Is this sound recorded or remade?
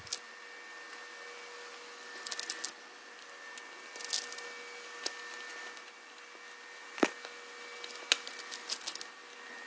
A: recorded